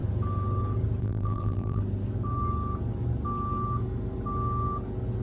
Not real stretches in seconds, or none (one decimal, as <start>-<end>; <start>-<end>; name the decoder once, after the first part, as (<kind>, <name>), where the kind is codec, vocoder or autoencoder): 1.0-1.8 (vocoder, BigVGAN v2)

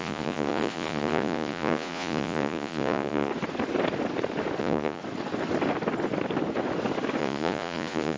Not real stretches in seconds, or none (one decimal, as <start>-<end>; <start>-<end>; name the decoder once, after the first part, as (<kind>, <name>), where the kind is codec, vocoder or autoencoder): 0.0-3.3 (vocoder, Vocos); 4.6-5.0; 7.2-8.2

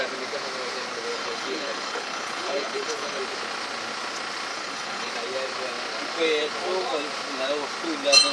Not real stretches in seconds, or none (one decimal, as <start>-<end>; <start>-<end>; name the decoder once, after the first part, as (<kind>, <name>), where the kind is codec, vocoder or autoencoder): 1.1-3.2 (codec, HILCodec); 4.5-5.1

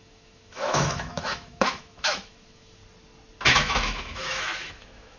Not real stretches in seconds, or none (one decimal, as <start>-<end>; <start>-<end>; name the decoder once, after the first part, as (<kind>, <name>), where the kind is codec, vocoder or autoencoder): 0.0-2.8 (autoencoder, DAC-VAE); 3.5-5.2

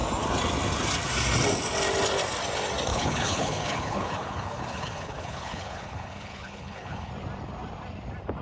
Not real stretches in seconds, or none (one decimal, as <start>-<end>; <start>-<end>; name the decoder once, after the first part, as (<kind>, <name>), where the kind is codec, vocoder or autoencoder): 2.9-7.1 (codec, HILCodec)

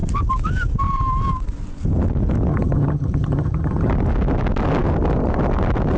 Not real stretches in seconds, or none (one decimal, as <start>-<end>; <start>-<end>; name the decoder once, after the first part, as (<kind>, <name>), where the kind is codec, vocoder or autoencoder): 2.5-3.9 (vocoder, HiFi-GAN)

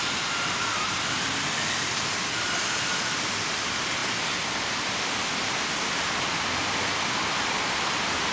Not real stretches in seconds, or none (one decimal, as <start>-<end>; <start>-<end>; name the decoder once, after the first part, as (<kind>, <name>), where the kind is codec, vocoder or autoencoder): 4.0-5.1 (vocoder, BigVGAN v2)

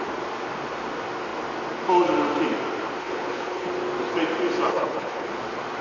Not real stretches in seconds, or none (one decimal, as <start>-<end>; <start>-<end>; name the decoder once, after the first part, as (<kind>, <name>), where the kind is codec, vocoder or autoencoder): 3.0-3.7 (codec, HILCodec); 4.7-5.3